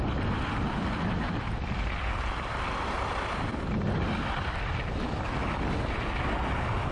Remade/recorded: recorded